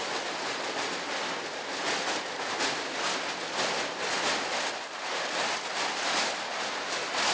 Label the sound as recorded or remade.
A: recorded